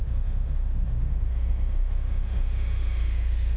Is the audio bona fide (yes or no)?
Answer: no